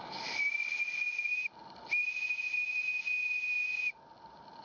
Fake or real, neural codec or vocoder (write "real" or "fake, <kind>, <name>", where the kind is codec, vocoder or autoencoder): real